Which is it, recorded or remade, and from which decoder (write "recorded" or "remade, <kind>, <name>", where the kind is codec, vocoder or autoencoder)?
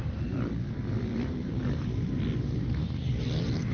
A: remade, vocoder, BigVGAN v2